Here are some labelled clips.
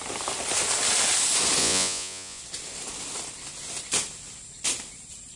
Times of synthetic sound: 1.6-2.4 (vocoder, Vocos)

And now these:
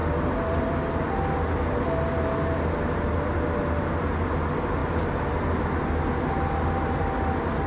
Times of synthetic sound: none

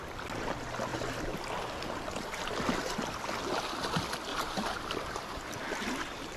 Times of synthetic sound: 4.3-5.3 (vocoder, BigVGAN v2)

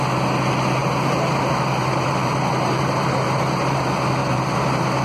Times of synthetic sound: 0.8-3.8 (vocoder, BigVGAN v2); 4.2-5.0

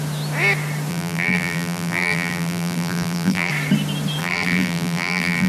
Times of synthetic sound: 0.9-3.5 (vocoder, BigVGAN v2); 4.2-5.5

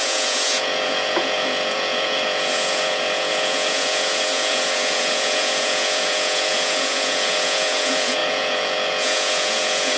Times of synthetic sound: 0.0-10.0 (vocoder, Vocos)

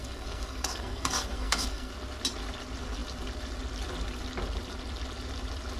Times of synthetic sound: 0.0-1.9 (codec, SNAC)

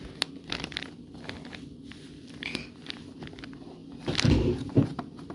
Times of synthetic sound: none